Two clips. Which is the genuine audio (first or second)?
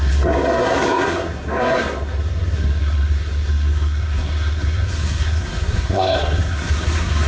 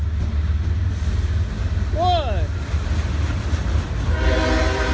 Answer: second